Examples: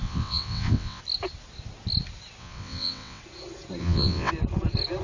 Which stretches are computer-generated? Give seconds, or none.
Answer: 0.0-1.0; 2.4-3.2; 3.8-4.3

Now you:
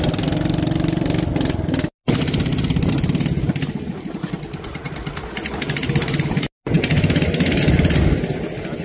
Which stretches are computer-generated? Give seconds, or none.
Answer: none

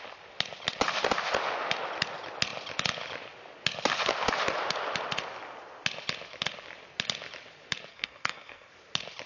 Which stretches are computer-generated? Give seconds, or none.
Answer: 7.9-8.7

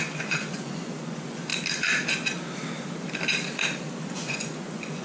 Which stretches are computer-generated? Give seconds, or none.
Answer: 0.0-1.5; 4.1-5.0